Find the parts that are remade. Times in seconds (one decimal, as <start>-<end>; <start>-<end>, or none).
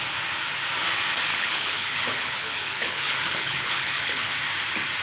1.3-4.3